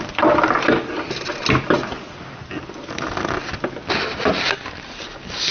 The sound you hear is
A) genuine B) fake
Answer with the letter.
A